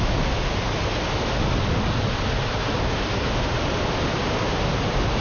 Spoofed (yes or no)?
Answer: no